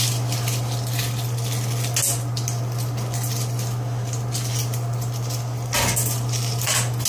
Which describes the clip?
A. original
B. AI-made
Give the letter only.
A